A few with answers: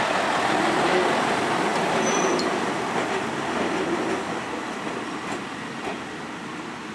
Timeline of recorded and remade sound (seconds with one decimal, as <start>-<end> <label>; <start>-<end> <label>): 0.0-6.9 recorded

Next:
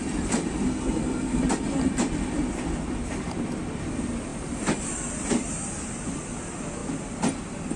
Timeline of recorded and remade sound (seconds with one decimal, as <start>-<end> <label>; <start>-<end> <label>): 0.0-0.7 recorded; 0.7-1.4 remade; 1.4-7.8 recorded

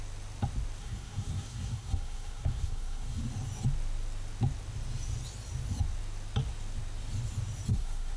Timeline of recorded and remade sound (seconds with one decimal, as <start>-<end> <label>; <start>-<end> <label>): 0.0-0.8 recorded; 0.8-3.2 remade; 3.2-7.7 recorded; 7.7-8.2 remade

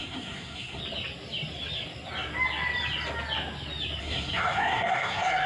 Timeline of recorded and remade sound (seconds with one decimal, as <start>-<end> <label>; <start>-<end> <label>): 0.0-0.8 remade; 0.8-4.0 recorded; 4.0-5.5 remade

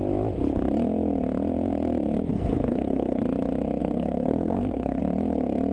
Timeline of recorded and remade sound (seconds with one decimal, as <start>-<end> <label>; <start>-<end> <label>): 0.0-2.3 recorded; 2.3-3.2 remade; 3.2-3.8 recorded; 3.8-5.0 remade; 5.0-5.7 recorded

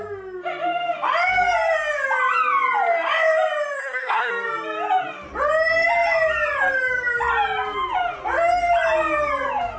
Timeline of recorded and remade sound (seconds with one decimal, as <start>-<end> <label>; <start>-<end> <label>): 0.0-3.8 recorded; 3.8-4.3 remade; 4.3-9.8 recorded

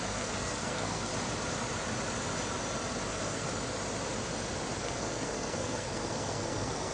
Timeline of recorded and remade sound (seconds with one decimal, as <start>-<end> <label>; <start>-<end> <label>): 0.0-1.1 remade; 1.1-3.1 recorded; 3.1-3.5 remade; 3.5-4.8 recorded; 4.8-6.9 remade